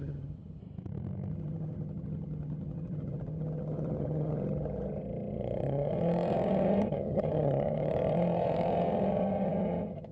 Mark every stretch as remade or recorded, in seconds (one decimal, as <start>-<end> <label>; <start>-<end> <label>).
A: 0.0-0.6 remade; 0.6-1.3 recorded; 1.3-10.1 remade